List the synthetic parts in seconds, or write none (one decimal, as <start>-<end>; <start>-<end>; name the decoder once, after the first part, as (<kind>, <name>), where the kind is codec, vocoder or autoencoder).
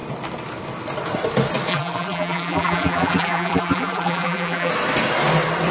1.7-4.7 (vocoder, BigVGAN v2)